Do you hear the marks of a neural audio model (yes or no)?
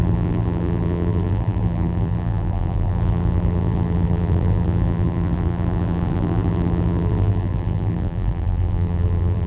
yes